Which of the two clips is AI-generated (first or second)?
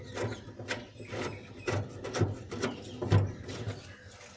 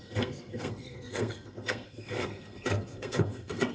second